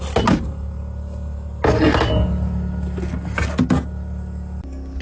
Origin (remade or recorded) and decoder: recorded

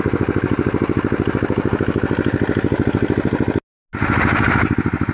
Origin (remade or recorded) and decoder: recorded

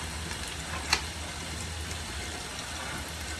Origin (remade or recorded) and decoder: recorded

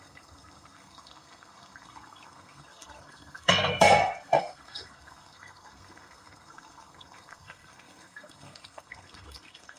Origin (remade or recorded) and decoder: remade, codec, SNAC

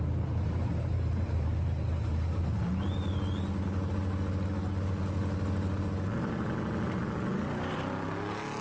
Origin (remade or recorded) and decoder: recorded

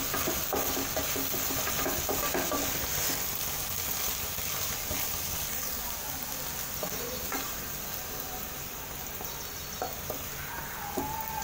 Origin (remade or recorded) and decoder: recorded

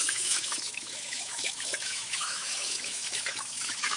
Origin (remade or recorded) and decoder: remade, autoencoder, DAC-VAE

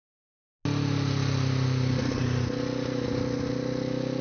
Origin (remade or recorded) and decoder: recorded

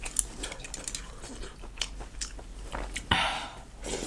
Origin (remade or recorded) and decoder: recorded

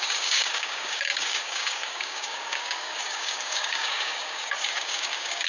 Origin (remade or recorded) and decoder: remade, codec, DAC